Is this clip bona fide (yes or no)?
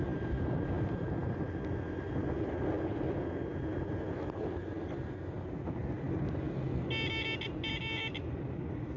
yes